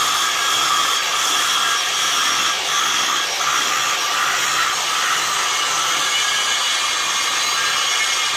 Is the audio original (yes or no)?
yes